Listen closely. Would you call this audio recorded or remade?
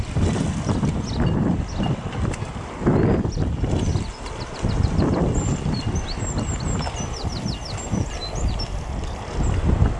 recorded